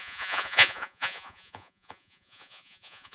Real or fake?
fake